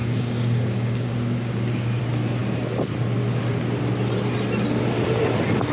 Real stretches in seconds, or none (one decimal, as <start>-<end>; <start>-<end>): 2.0-5.7